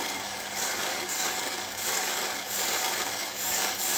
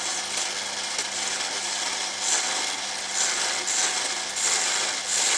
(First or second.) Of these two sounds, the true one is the second